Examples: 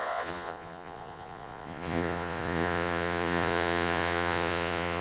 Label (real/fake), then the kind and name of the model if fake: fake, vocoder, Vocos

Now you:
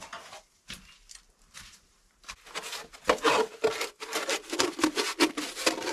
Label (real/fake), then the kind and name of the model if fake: real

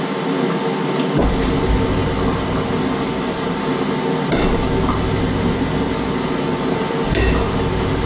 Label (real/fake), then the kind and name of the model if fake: real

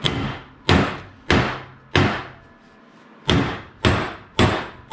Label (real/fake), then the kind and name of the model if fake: real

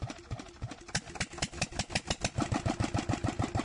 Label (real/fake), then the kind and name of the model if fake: real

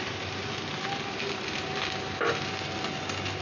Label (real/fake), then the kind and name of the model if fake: real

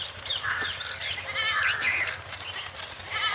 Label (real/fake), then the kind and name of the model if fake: real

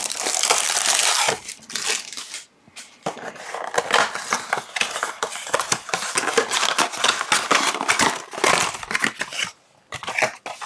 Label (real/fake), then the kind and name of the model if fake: real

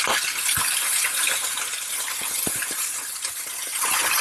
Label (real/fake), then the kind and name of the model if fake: real